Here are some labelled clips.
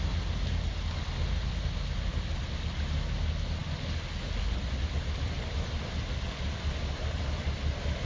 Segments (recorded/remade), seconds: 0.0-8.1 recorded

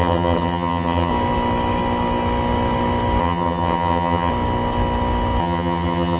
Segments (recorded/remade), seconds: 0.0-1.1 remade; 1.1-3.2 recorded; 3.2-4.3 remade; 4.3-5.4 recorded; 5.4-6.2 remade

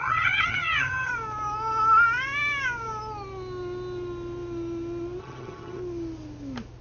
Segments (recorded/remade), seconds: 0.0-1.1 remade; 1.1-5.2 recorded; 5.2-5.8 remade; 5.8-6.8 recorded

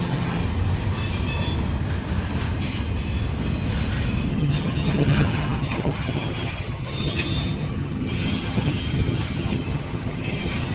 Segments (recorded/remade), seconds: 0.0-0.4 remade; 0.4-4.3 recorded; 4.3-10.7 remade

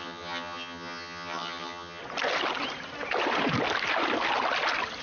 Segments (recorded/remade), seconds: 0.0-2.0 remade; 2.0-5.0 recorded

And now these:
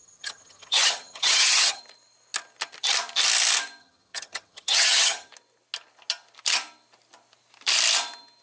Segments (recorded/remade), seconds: 0.0-1.8 remade; 1.8-3.8 recorded; 3.8-5.3 remade; 5.3-8.4 recorded

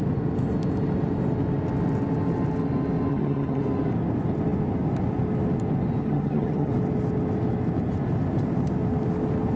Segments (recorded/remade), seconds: 0.0-3.1 recorded; 3.1-3.6 remade; 3.6-6.0 recorded; 6.0-6.7 remade; 6.7-9.6 recorded

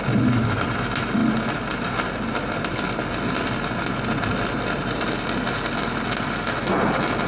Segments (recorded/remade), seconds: 0.0-7.3 recorded